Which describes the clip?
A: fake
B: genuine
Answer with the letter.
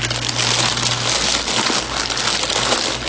B